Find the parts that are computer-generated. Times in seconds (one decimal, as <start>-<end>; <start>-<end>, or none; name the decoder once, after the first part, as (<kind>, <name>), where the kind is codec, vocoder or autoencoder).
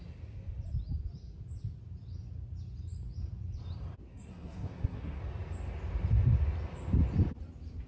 4.1-5.2 (codec, SNAC)